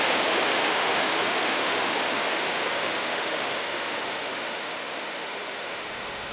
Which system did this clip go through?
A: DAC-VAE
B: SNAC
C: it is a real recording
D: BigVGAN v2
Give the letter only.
A